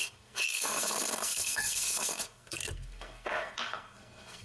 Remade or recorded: remade